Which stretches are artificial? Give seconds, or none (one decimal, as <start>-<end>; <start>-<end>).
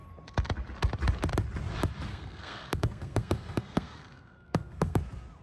2.1-5.0